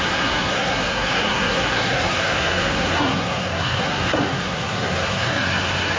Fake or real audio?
fake